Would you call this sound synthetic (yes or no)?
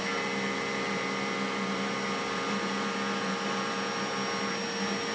no